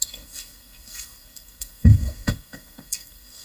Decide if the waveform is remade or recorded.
remade